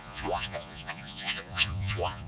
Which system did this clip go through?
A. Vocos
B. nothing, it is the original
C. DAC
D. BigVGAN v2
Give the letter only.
A